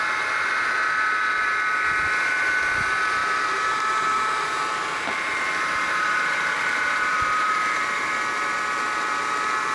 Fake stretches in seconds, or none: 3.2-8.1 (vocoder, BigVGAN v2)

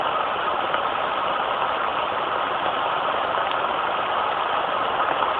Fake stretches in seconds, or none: none

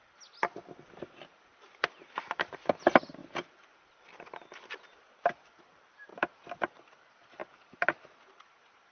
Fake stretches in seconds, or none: 7.4-8.4 (vocoder, BigVGAN v2)

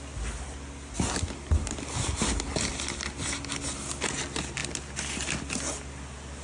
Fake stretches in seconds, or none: none

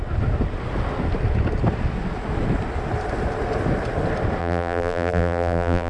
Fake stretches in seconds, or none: 4.4-5.9 (vocoder, BigVGAN v2)

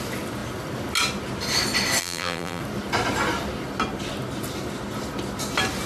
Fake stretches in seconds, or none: 2.0-2.6 (vocoder, BigVGAN v2)

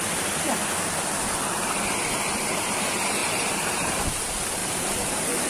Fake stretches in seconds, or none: 0.0-0.6 (vocoder, BigVGAN v2); 1.5-5.5

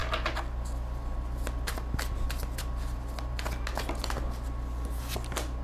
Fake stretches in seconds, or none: none